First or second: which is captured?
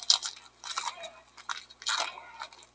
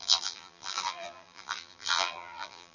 first